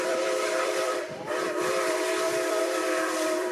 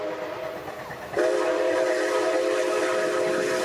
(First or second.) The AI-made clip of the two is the first